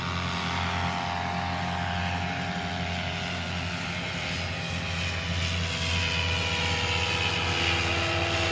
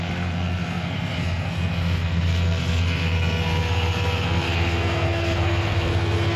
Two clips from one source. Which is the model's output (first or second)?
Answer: second